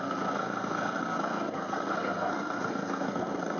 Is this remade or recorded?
remade